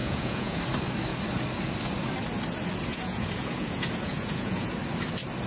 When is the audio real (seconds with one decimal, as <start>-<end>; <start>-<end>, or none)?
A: 0.6-2.9; 4.7-5.5